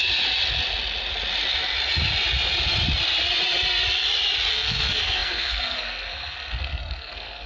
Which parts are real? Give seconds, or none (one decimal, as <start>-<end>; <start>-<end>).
0.0-4.5